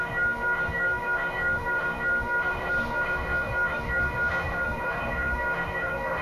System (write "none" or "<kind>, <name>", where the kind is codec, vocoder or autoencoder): autoencoder, DAC-VAE